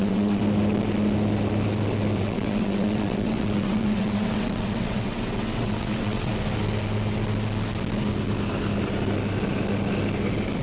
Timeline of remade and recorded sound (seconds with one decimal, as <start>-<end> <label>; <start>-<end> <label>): 0.0-0.4 remade; 0.4-2.2 recorded; 2.2-6.3 remade; 6.3-10.6 recorded